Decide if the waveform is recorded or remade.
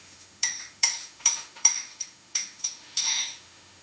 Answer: remade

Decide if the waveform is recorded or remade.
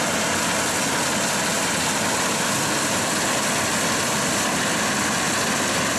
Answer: recorded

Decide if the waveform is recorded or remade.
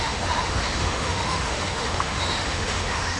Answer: remade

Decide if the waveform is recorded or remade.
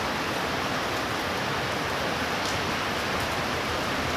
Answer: recorded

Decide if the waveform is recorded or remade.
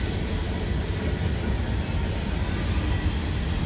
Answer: recorded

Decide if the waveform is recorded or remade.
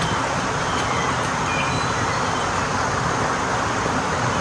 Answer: recorded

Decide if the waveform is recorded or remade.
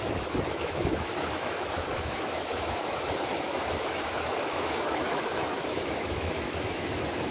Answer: remade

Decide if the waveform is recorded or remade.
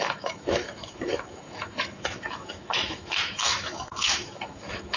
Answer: remade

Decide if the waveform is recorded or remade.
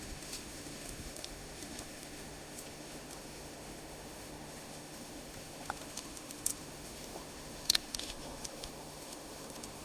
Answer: remade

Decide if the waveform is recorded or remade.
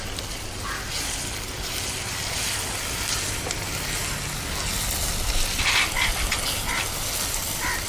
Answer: recorded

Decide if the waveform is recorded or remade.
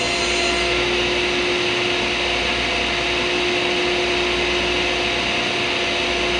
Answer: recorded